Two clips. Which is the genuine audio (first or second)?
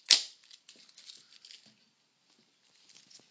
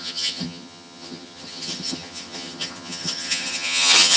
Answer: first